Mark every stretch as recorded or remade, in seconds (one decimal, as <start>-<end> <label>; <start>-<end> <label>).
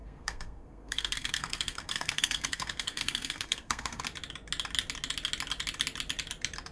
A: 0.0-4.0 remade; 4.0-6.7 recorded